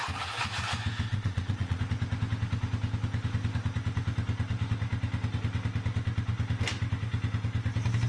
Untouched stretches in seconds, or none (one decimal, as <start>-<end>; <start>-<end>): 0.0-1.1; 1.8-8.1